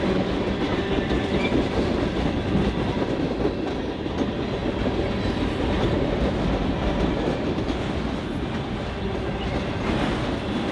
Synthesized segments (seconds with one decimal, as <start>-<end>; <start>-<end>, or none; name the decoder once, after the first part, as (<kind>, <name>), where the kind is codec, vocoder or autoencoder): none